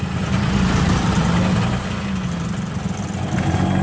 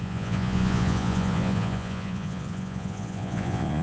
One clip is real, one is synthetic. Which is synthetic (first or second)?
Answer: second